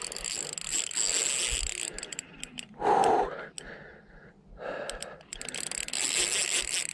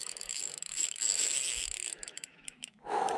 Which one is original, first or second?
first